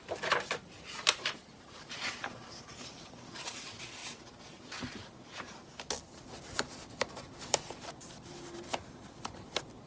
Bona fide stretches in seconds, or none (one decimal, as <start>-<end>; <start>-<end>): 4.0-6.9